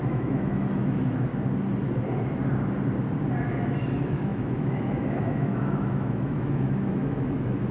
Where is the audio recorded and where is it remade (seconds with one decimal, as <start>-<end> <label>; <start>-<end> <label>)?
0.0-1.3 remade; 1.3-3.4 recorded; 3.4-7.7 remade